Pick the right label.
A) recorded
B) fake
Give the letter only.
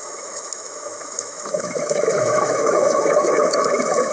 B